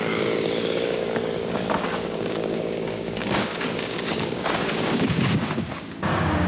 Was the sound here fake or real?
fake